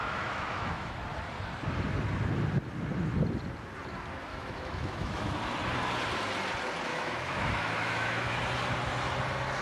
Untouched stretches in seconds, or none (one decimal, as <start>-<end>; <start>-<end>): 1.0-4.3; 5.3-6.9; 8.4-9.6